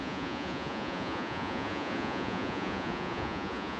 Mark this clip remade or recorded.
remade